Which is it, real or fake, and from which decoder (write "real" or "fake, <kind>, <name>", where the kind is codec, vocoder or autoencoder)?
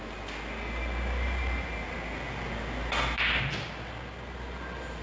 real